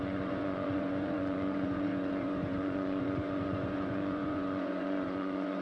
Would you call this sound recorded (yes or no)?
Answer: no